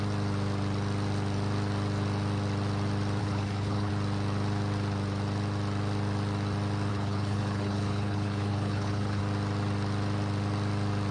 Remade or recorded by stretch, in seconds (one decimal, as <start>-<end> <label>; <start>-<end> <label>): 0.0-3.2 recorded; 3.2-3.9 remade; 3.9-6.9 recorded; 6.9-9.2 remade; 9.2-11.1 recorded

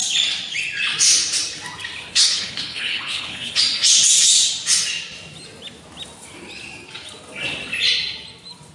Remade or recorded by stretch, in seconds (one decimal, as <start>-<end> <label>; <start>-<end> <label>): 0.0-2.1 recorded; 2.1-3.6 remade; 3.6-8.7 recorded

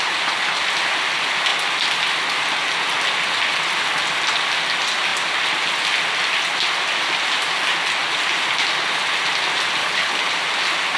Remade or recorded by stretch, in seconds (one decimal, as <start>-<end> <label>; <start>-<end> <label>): 0.0-9.8 recorded; 9.8-10.3 remade; 10.3-11.0 recorded

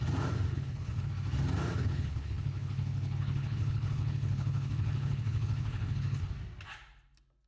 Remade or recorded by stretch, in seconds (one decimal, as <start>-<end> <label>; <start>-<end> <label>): 0.0-0.5 recorded; 0.5-1.1 remade; 1.1-1.8 recorded; 1.8-6.3 remade; 6.3-7.5 recorded

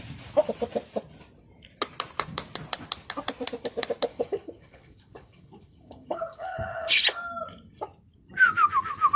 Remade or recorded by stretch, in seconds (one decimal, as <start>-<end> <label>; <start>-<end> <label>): 0.0-4.1 recorded; 4.1-7.0 remade; 7.0-9.2 recorded